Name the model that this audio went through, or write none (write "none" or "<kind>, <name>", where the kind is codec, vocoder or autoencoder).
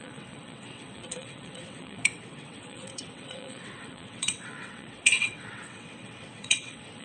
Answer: vocoder, WaveNeXt